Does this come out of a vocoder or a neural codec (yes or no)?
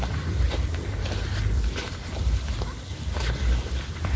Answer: no